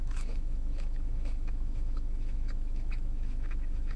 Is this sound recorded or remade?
remade